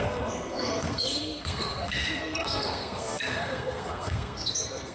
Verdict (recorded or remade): remade